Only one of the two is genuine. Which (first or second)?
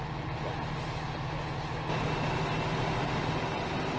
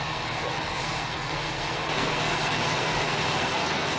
first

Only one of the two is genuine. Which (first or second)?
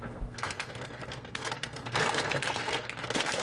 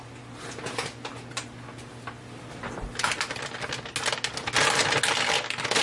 second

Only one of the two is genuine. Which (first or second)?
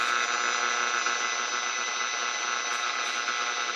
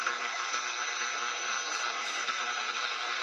first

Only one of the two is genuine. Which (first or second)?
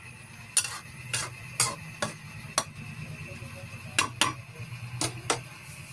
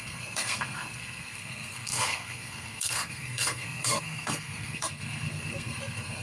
first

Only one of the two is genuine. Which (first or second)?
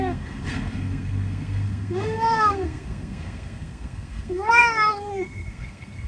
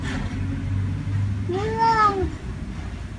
second